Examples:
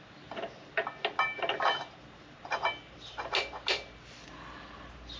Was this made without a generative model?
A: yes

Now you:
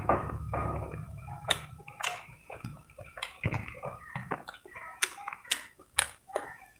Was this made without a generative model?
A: no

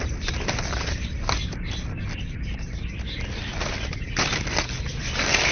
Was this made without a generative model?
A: yes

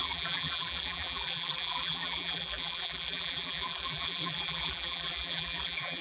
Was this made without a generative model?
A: no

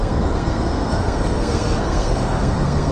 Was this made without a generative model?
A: no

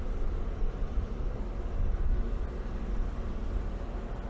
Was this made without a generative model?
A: yes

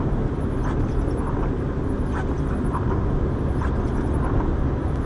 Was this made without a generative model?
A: yes